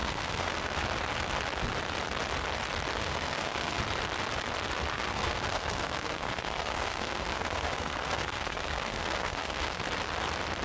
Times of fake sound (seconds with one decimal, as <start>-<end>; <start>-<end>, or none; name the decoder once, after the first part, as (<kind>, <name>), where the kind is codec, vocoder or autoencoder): 0.0-0.8 (codec, SNAC); 3.0-3.8; 4.9-9.8